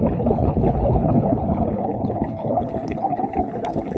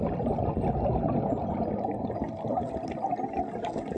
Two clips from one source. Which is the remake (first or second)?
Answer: first